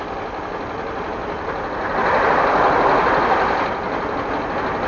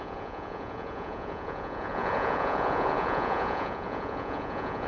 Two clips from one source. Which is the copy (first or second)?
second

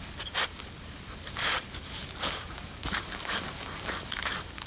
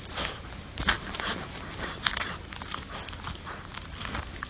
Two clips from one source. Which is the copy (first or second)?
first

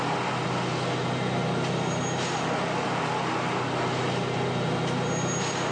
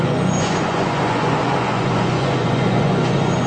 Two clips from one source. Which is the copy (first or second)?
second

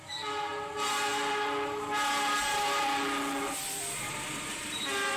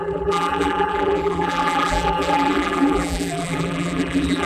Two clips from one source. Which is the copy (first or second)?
second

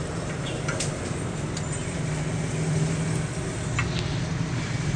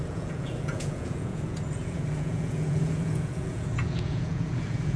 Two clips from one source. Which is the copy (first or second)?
second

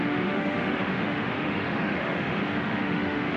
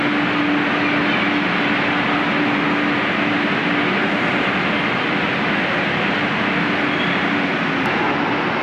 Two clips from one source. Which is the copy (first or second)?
first